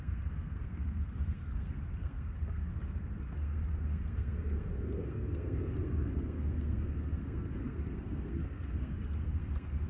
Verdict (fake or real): fake